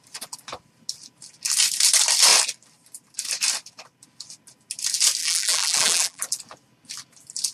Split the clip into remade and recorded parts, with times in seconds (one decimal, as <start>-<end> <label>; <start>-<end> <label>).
0.0-5.2 recorded; 5.2-6.2 remade; 6.2-7.5 recorded